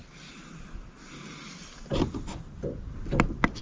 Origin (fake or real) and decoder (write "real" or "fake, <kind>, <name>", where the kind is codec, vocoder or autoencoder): real